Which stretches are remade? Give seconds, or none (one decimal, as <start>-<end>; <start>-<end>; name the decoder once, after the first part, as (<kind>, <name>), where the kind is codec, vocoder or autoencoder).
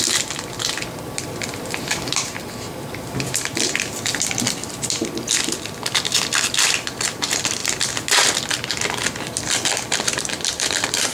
0.0-5.0 (vocoder, BigVGAN v2); 6.3-7.6; 9.4-11.1